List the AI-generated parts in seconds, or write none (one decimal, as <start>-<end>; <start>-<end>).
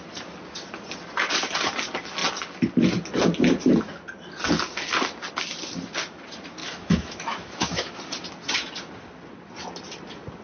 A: 6.6-8.0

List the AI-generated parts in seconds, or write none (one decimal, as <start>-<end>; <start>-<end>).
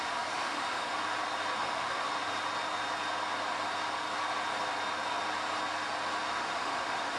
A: 0.0-0.9; 1.6-2.1; 6.3-7.2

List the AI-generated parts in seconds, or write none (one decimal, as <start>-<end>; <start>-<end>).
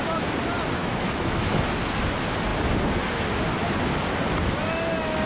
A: 0.8-1.6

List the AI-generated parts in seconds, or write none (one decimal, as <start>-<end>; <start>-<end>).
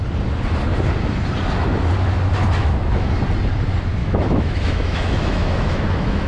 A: 2.6-3.1; 4.0-6.3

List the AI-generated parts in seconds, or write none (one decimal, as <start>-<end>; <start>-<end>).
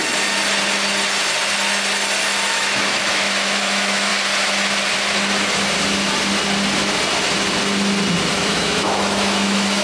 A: 2.5-4.1; 8.3-9.8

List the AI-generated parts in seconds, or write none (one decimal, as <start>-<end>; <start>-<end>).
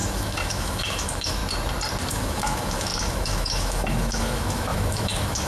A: 0.0-1.4; 2.1-5.5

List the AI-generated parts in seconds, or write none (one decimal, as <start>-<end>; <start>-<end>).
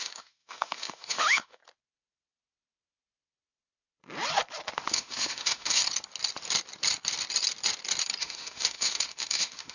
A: 0.0-1.6; 4.9-5.8; 8.2-9.7